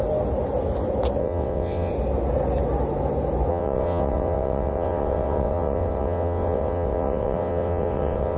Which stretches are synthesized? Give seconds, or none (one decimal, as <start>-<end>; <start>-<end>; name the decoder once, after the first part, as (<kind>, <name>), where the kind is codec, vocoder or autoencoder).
1.2-1.9 (vocoder, WaveNeXt); 3.5-8.4